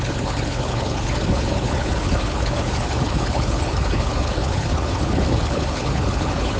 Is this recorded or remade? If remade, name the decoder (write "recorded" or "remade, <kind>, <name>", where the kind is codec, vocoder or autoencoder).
remade, codec, HILCodec